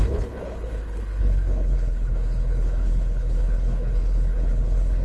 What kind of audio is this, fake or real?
fake